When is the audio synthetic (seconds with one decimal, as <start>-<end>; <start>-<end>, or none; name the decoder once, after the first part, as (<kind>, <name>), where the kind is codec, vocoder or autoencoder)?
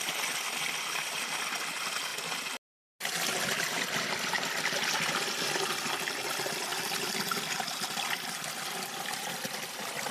none